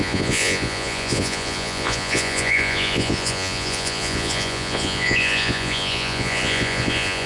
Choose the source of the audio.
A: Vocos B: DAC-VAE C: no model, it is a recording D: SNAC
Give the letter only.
A